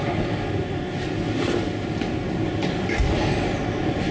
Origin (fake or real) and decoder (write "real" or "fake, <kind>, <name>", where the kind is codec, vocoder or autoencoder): real